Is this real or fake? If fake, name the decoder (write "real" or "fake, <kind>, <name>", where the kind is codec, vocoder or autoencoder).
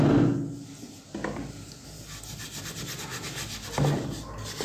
real